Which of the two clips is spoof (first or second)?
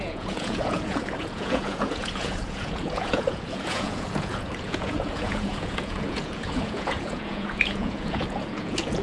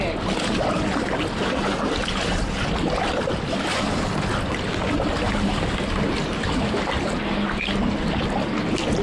first